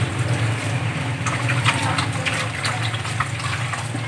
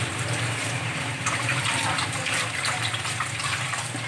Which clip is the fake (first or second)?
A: second